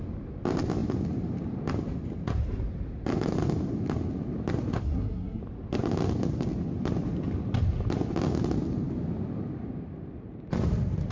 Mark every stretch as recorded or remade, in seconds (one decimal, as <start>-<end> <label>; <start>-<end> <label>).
0.0-4.8 recorded; 4.8-5.4 remade; 5.4-11.1 recorded